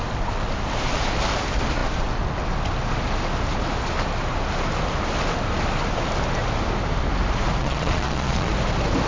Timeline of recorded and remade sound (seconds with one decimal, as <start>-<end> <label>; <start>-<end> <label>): 0.0-7.6 recorded; 7.6-8.5 remade; 8.5-9.1 recorded

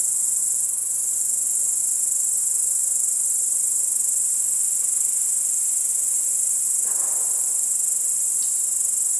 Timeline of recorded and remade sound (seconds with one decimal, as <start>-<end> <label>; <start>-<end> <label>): 0.0-1.8 remade; 1.8-5.9 recorded; 5.9-6.4 remade; 6.4-9.2 recorded

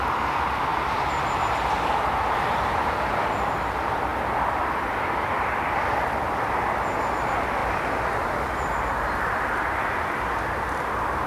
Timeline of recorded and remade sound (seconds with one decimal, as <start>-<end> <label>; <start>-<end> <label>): 0.0-11.3 recorded

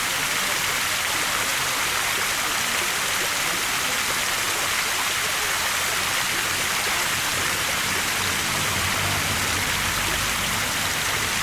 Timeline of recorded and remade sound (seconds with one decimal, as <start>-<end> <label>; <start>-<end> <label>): 0.0-7.3 recorded; 7.3-8.8 remade; 8.8-11.4 recorded

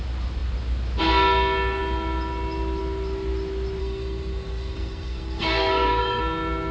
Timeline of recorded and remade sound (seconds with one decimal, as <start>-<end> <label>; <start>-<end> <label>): 0.0-3.8 recorded; 3.8-6.2 remade; 6.2-6.7 recorded